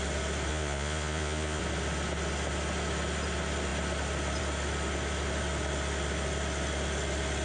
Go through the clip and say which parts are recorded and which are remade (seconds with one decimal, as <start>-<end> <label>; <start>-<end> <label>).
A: 0.0-0.5 recorded; 0.5-1.6 remade; 1.6-7.4 recorded